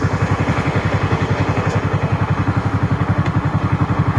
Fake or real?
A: fake